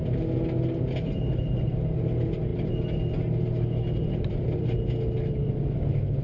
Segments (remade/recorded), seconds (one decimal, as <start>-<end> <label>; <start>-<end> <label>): 0.0-6.2 recorded